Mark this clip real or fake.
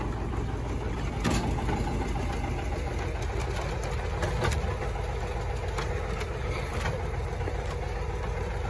real